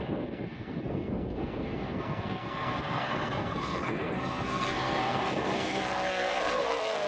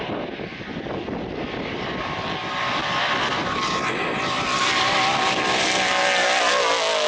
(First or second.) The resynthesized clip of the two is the first